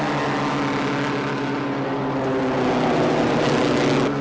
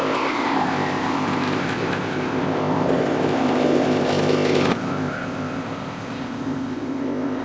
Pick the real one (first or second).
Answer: first